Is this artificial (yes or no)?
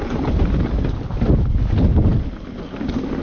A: no